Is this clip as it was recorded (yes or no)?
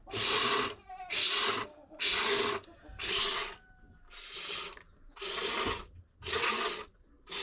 yes